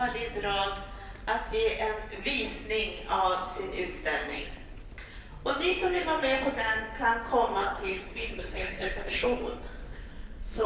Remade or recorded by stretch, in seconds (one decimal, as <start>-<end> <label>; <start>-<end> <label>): 0.0-4.3 recorded; 4.3-4.9 remade; 4.9-7.6 recorded; 7.6-9.4 remade; 9.4-9.8 recorded; 9.8-10.7 remade